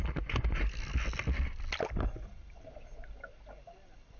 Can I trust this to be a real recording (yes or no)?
yes